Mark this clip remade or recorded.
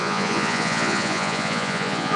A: remade